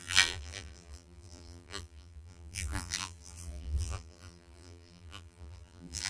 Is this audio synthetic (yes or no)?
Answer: yes